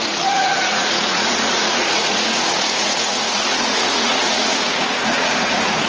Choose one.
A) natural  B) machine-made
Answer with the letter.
B